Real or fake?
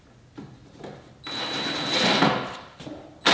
real